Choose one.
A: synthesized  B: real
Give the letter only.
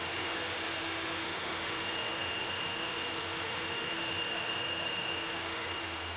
A